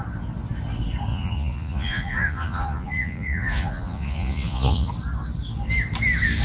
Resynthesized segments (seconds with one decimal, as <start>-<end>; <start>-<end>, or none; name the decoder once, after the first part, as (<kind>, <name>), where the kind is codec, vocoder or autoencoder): 1.1-4.9 (vocoder, Vocos)